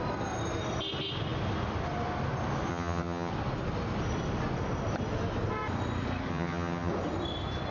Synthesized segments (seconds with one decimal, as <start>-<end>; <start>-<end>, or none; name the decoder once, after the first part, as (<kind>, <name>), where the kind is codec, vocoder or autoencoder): 2.7-3.3 (vocoder, HiFi-GAN); 6.3-6.9